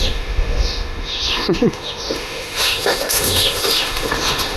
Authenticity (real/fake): fake